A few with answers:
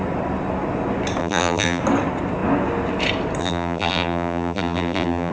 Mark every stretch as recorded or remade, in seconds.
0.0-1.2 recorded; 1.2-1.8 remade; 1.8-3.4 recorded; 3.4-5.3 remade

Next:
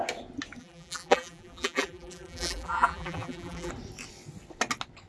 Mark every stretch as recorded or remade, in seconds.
0.0-0.6 recorded; 0.6-3.7 remade; 3.7-5.1 recorded

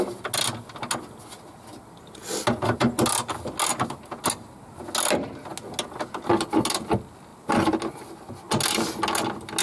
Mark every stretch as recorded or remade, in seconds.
0.0-7.3 recorded; 7.3-7.8 remade; 7.8-9.6 recorded

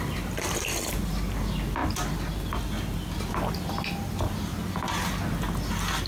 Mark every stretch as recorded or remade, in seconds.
0.0-6.1 recorded

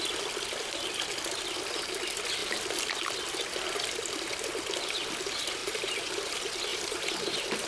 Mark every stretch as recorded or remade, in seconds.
0.0-5.6 recorded; 5.6-6.3 remade; 6.3-6.7 recorded; 6.7-7.7 remade

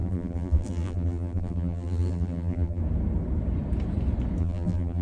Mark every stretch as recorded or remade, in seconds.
0.0-2.8 remade; 2.8-4.4 recorded; 4.4-5.0 remade

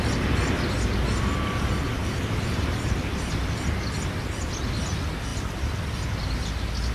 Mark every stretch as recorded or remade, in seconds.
0.0-2.0 recorded; 2.0-2.8 remade; 2.8-6.9 recorded

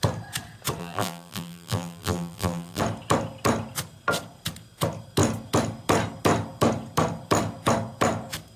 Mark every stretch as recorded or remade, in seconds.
0.0-0.8 recorded; 0.8-2.8 remade; 2.8-8.6 recorded